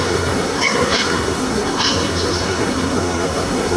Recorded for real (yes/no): no